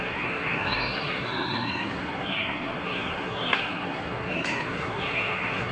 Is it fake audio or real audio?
fake